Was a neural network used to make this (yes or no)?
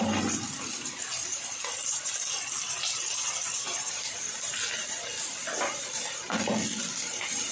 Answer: no